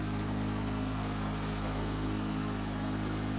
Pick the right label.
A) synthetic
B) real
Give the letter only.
A